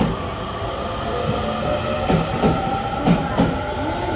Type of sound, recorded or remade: recorded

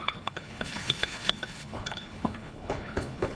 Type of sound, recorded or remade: remade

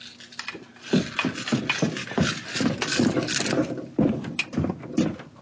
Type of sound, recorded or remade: recorded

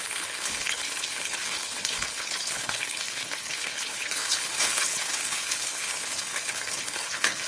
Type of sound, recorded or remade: remade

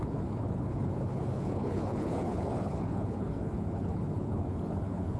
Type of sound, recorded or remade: remade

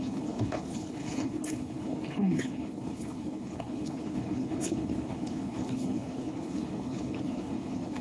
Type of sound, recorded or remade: remade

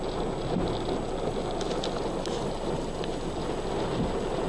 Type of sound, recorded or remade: recorded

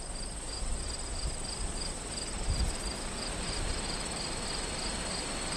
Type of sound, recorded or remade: recorded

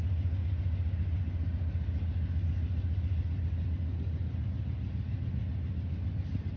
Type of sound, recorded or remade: recorded